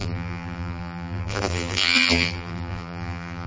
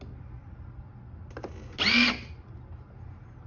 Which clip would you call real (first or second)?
second